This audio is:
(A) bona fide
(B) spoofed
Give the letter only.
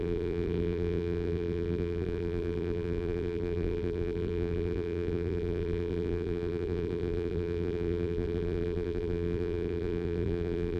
B